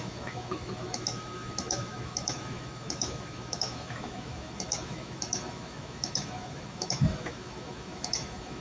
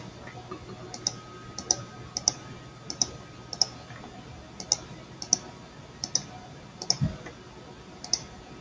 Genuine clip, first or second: second